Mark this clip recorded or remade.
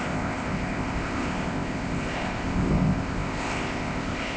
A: remade